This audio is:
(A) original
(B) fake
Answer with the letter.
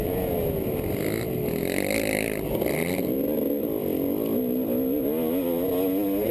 A